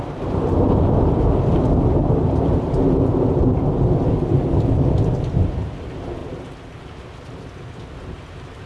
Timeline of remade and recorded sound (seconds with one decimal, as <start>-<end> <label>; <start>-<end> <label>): 0.0-8.7 recorded